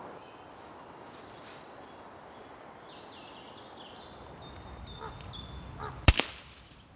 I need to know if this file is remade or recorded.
recorded